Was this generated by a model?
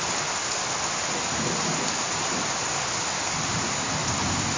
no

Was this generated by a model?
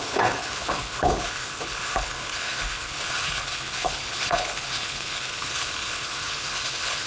yes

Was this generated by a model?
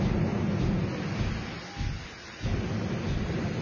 no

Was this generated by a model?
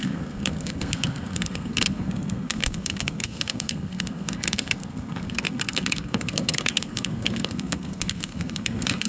yes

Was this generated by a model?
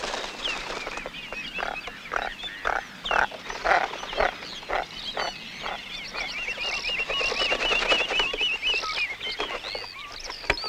no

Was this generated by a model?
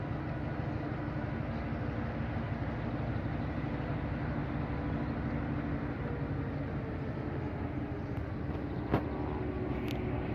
no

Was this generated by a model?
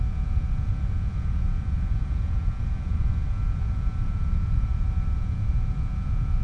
yes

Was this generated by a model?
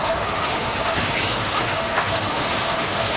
yes